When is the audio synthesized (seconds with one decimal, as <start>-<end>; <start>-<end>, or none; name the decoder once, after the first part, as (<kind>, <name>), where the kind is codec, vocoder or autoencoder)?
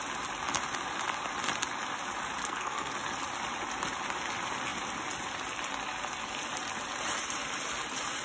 2.4-2.9 (codec, SNAC)